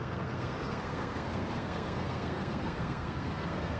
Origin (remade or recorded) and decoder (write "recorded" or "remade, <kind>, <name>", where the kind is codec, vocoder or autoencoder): remade, codec, SNAC